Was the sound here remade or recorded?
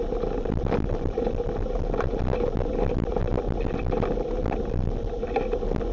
recorded